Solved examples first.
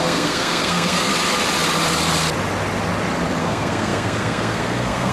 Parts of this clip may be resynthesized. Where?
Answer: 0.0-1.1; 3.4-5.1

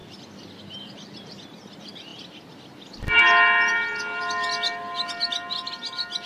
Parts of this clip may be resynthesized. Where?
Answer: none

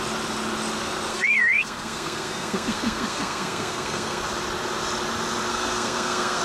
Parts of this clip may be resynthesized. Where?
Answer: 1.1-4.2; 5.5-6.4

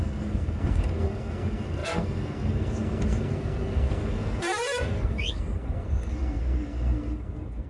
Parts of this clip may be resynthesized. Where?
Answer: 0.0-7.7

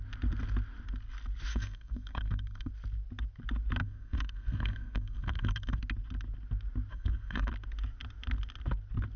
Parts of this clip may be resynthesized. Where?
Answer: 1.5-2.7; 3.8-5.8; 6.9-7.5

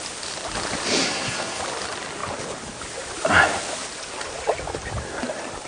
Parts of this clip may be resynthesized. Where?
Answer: 1.0-1.6

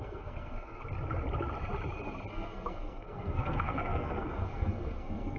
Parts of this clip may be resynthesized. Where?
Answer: 0.0-0.8; 2.3-5.4